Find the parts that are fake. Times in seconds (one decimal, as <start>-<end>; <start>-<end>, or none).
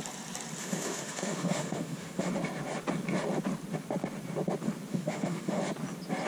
0.6-2.3; 4.9-5.6